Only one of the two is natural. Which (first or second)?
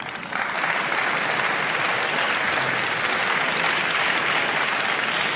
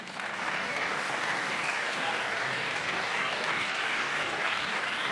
first